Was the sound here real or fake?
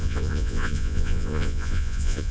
fake